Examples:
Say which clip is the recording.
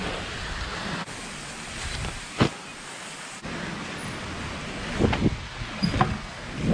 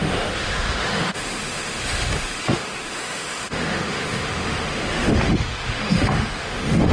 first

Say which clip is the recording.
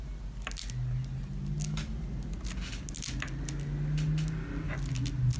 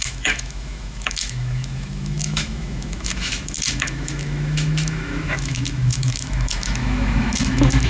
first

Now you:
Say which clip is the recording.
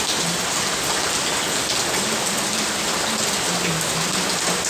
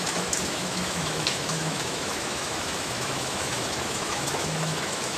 first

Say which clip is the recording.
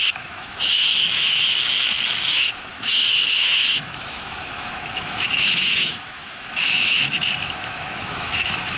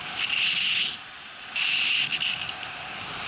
second